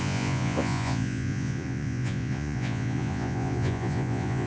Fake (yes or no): yes